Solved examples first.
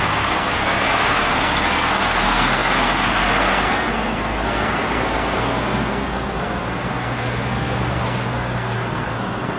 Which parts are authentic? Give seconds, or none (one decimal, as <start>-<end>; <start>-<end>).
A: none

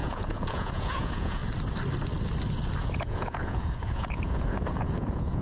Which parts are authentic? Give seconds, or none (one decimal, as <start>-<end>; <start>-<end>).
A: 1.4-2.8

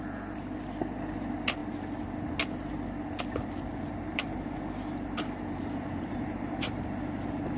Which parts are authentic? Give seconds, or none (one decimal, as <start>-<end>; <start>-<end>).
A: 0.0-4.1

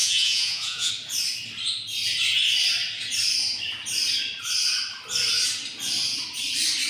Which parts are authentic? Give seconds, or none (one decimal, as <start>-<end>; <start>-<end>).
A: 0.9-6.9